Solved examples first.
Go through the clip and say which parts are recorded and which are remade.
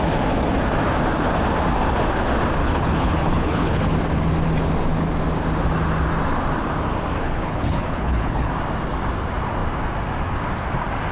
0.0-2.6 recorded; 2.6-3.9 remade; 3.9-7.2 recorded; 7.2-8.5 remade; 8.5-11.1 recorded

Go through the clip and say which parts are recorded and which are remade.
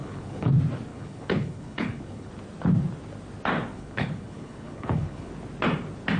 0.0-0.5 remade; 0.5-0.9 recorded; 0.9-2.3 remade; 2.3-3.7 recorded; 3.7-5.3 remade; 5.3-6.2 recorded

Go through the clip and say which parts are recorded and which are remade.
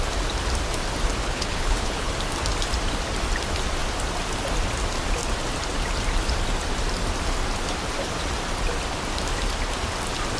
0.0-1.2 recorded; 1.2-2.1 remade; 2.1-10.4 recorded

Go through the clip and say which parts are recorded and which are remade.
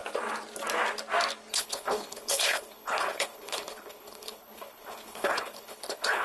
0.0-1.5 recorded; 1.5-6.2 remade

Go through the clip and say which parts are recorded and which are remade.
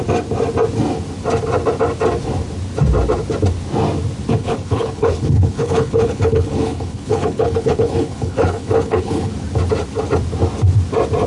0.0-4.3 recorded; 4.3-9.3 remade; 9.3-11.3 recorded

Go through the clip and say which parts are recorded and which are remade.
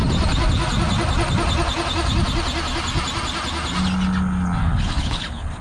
0.0-4.6 recorded; 4.6-5.6 remade